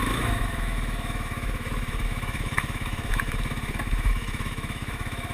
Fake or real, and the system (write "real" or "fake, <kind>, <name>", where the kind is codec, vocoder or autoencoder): fake, autoencoder, DAC-VAE